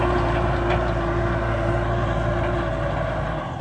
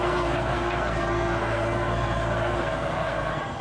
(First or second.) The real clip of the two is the first